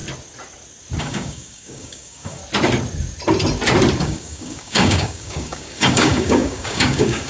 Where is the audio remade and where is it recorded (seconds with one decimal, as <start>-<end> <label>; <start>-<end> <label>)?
0.0-1.0 recorded; 1.0-2.4 remade; 2.4-4.0 recorded; 4.0-7.3 remade